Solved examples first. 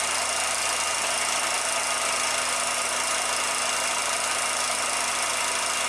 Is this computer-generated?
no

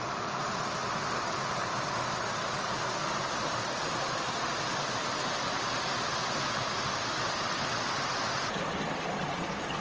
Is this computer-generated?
no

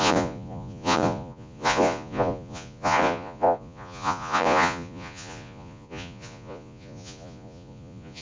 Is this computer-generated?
yes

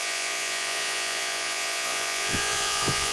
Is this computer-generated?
yes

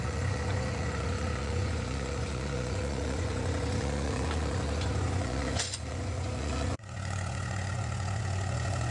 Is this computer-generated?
yes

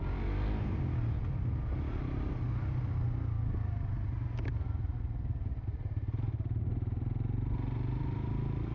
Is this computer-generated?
no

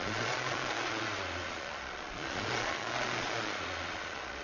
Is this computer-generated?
yes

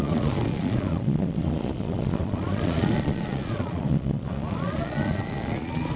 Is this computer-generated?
yes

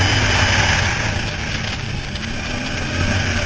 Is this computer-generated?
no